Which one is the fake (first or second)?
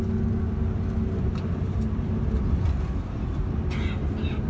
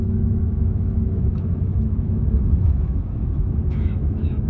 second